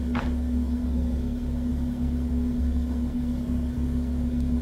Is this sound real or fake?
fake